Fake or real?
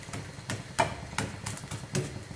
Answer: real